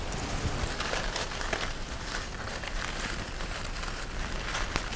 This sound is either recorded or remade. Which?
recorded